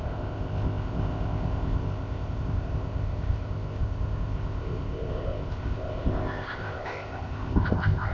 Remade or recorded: remade